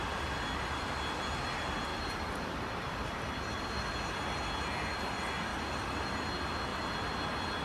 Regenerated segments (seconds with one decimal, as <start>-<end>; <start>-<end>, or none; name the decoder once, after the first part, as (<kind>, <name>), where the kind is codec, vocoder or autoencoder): 1.9-3.4 (vocoder, BigVGAN v2); 5.5-6.1